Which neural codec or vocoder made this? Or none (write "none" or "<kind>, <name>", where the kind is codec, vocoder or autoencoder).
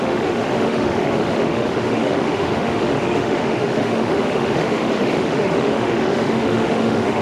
autoencoder, DAC-VAE